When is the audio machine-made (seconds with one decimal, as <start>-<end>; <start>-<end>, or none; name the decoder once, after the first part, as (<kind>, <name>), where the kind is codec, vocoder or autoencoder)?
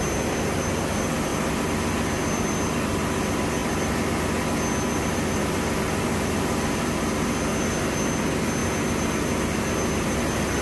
none